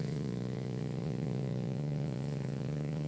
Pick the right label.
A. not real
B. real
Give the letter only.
A